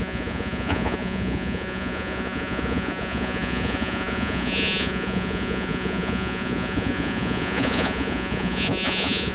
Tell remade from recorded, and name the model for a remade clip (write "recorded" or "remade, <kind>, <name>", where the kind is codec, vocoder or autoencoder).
remade, vocoder, Vocos